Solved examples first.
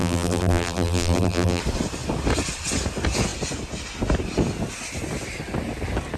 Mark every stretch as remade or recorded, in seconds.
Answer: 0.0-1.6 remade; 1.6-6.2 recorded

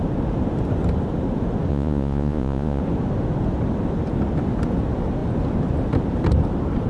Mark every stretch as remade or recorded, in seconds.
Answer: 0.0-1.7 recorded; 1.7-2.8 remade; 2.8-6.9 recorded

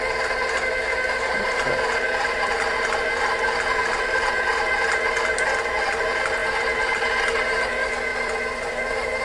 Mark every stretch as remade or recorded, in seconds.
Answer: 0.0-0.9 recorded; 0.9-4.5 remade; 4.5-8.1 recorded; 8.1-9.2 remade

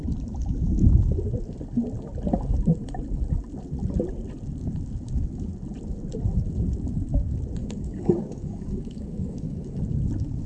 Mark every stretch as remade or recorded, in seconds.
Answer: 0.0-7.6 recorded; 7.6-9.8 remade; 9.8-10.5 recorded

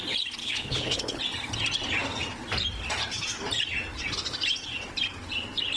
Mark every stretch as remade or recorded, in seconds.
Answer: 0.0-0.4 recorded; 0.4-1.2 remade; 1.2-5.8 recorded

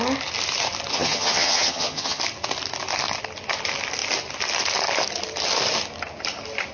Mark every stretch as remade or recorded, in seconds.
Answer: 0.0-0.9 recorded; 0.9-2.2 remade; 2.2-6.7 recorded